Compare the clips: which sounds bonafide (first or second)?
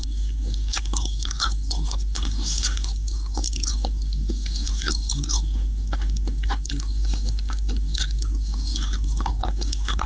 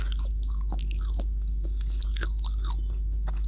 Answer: second